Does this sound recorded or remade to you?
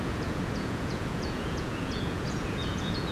remade